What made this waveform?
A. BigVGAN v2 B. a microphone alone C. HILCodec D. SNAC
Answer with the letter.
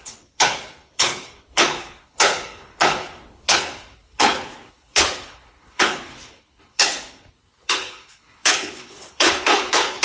C